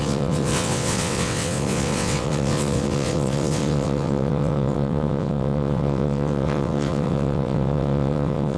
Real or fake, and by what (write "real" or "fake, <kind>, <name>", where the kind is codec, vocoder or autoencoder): fake, vocoder, WaveNeXt